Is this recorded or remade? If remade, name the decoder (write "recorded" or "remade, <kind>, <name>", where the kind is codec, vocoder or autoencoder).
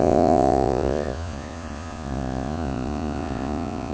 remade, vocoder, Vocos